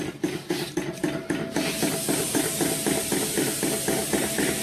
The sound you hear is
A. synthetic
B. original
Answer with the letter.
B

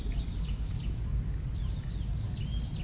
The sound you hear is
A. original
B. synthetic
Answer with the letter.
A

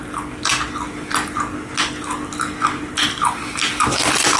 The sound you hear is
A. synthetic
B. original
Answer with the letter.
B